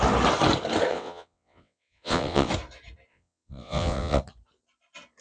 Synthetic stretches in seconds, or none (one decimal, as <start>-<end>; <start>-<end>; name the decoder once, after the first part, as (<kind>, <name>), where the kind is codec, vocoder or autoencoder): 0.9-2.5 (vocoder, WaveNeXt); 3.1-4.2